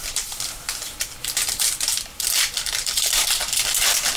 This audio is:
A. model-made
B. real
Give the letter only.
A